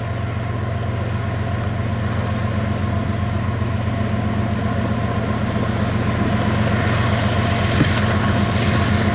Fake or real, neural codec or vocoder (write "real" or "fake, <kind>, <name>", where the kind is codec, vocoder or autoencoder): real